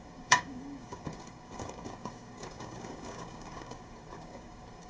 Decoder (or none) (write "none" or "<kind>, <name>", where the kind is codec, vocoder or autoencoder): codec, DAC